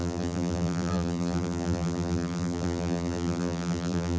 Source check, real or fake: fake